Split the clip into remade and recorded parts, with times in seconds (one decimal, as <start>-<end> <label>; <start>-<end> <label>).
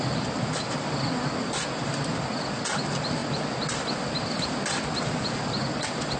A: 0.0-6.2 recorded